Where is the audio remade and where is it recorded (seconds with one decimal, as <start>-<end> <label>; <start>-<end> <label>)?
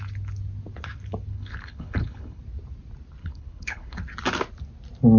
0.0-1.3 recorded; 1.3-2.4 remade; 2.4-3.2 recorded; 3.2-4.0 remade; 4.0-5.2 recorded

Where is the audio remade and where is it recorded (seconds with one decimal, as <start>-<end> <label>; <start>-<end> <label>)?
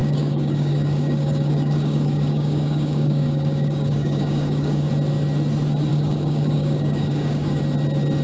0.0-4.9 remade; 4.9-5.9 recorded; 5.9-7.6 remade; 7.6-8.2 recorded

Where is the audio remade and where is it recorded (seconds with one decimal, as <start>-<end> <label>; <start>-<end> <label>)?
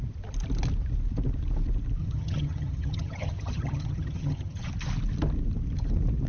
0.0-2.0 recorded; 2.0-4.7 remade; 4.7-6.3 recorded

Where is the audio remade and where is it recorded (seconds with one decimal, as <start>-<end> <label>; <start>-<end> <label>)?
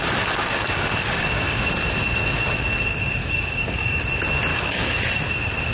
0.0-0.4 recorded; 0.4-1.6 remade; 1.6-3.2 recorded; 3.2-4.0 remade; 4.0-4.5 recorded; 4.5-5.0 remade; 5.0-5.7 recorded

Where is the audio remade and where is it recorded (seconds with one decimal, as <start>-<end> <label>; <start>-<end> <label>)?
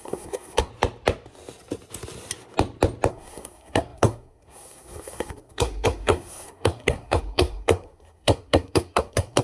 0.0-0.7 remade; 0.7-3.1 recorded; 3.1-9.4 remade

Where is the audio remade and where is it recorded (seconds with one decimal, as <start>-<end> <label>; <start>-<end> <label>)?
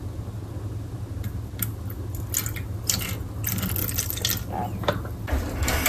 0.0-5.9 recorded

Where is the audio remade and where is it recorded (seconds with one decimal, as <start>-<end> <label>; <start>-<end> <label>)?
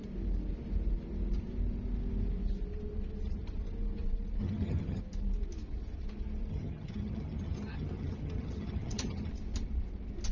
0.0-4.4 recorded; 4.4-5.0 remade; 5.0-6.5 recorded; 6.5-9.3 remade; 9.3-10.3 recorded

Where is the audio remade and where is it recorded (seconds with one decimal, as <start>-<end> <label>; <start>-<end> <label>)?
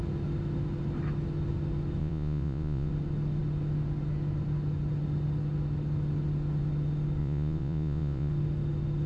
0.0-2.0 recorded; 2.0-2.9 remade; 2.9-7.2 recorded; 7.2-8.3 remade; 8.3-9.1 recorded